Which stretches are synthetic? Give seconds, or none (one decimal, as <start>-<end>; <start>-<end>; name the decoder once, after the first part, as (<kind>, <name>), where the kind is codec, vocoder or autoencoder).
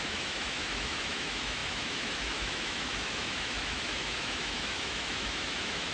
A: 0.0-5.9 (autoencoder, DAC-VAE)